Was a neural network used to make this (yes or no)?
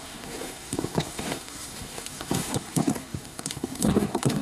yes